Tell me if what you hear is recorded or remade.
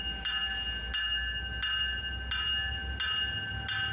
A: recorded